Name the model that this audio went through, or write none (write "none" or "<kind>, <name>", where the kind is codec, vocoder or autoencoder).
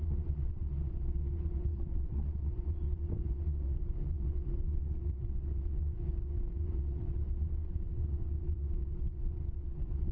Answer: vocoder, WaveNeXt